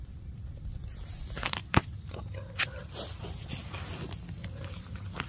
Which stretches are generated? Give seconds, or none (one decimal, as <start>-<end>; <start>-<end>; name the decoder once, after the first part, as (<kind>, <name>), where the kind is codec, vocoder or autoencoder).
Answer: 0.0-3.6 (vocoder, BigVGAN v2); 4.7-5.3